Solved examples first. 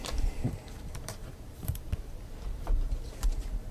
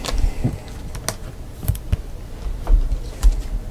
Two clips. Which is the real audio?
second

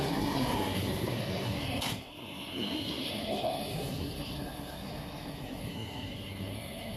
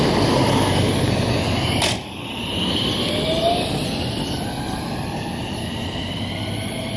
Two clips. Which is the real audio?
second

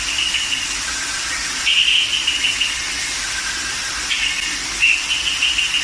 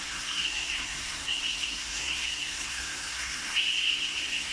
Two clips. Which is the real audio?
first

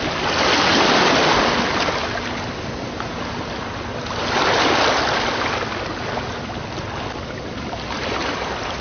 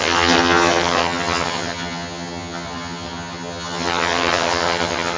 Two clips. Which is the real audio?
first